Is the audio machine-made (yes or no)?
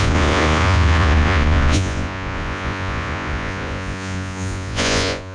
yes